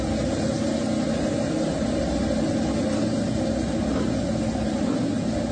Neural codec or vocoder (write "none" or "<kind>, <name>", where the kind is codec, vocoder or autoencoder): none